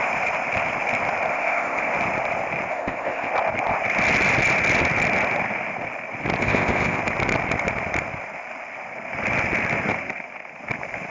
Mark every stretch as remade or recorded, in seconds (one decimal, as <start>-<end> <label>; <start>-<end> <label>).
0.0-1.3 recorded; 1.3-1.9 remade; 1.9-2.7 recorded; 2.7-3.3 remade; 3.3-6.4 recorded; 6.4-7.0 remade; 7.0-11.1 recorded